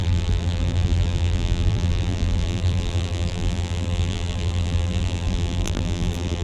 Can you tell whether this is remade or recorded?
remade